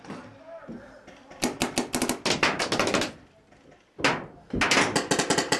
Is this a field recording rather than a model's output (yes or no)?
yes